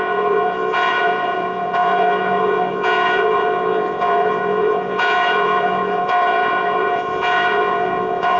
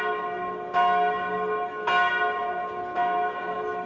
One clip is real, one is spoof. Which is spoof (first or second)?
first